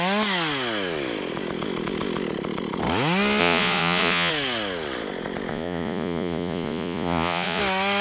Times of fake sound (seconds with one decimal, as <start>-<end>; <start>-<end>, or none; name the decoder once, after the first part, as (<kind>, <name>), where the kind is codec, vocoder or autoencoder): 3.4-4.3 (vocoder, Vocos); 5.5-7.6